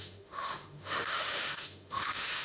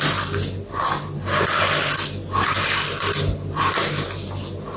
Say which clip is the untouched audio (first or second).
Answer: second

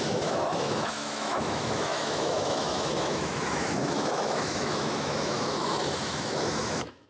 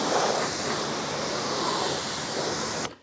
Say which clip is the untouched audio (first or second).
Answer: second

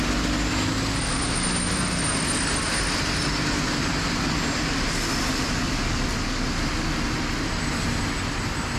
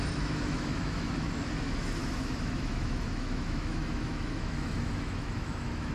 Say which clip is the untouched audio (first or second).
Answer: first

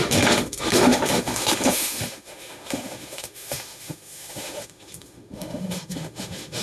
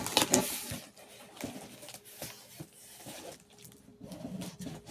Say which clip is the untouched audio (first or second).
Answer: second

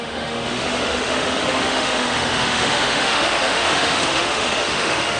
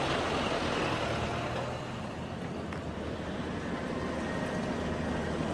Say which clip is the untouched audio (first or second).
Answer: second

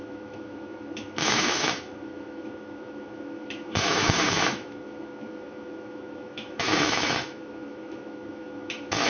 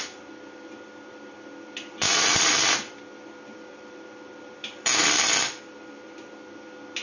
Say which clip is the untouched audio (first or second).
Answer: second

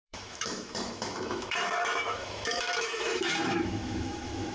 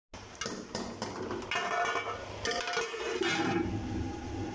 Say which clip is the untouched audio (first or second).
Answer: second